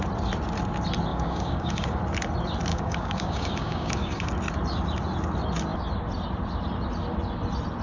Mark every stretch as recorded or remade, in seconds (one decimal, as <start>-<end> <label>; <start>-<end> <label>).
0.0-1.1 recorded; 1.1-2.0 remade; 2.0-2.7 recorded; 2.7-4.3 remade; 4.3-7.8 recorded